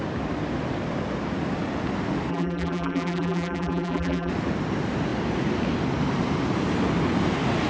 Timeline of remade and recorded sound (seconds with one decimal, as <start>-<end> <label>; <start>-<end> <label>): 0.0-2.3 recorded; 2.3-4.3 remade; 4.3-7.7 recorded

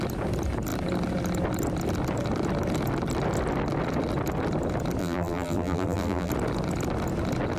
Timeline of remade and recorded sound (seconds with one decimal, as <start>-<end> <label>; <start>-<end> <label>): 0.0-5.0 recorded; 5.0-6.3 remade; 6.3-7.6 recorded

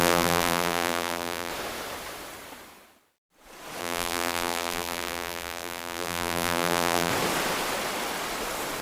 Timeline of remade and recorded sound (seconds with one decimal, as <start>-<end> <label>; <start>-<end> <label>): 0.0-1.5 remade; 1.5-3.8 recorded; 3.8-7.1 remade; 7.1-8.8 recorded

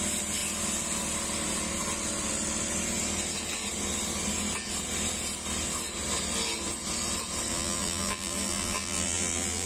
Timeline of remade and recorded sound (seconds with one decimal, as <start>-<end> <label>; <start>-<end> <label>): 0.0-7.5 recorded; 7.5-9.7 remade

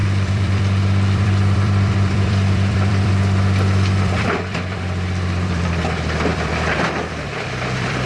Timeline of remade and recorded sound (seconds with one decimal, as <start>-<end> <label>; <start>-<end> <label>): 0.0-8.1 remade

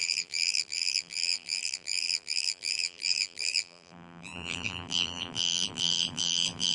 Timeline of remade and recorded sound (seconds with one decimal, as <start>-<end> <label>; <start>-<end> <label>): 0.0-6.7 remade